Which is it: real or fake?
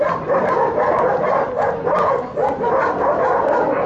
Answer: real